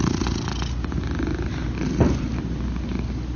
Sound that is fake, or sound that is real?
real